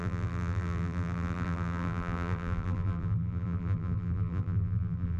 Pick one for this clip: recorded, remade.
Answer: remade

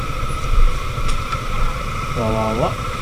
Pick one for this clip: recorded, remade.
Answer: remade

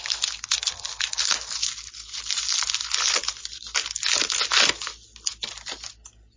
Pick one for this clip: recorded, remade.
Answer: recorded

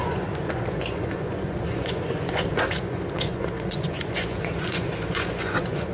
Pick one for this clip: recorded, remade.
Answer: remade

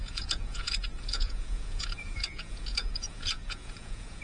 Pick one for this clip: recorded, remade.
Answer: remade